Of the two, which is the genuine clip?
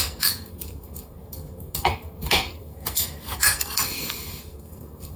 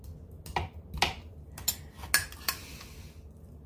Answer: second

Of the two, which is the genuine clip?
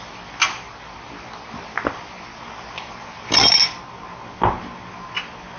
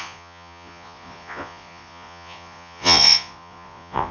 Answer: first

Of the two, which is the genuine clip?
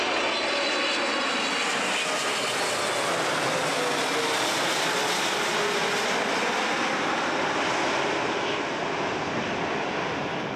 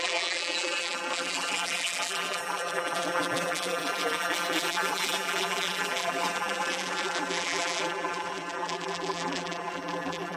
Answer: first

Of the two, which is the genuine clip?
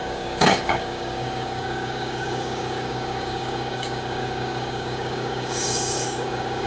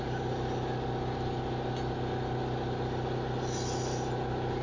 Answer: second